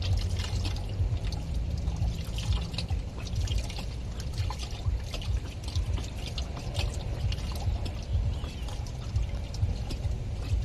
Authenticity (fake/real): real